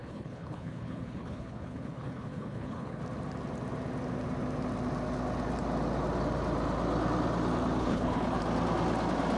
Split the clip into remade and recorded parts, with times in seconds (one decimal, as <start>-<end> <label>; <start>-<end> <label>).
0.0-3.0 remade; 3.0-7.8 recorded; 7.8-8.4 remade; 8.4-9.4 recorded